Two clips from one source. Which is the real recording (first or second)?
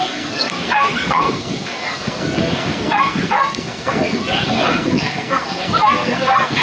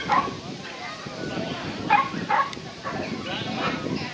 second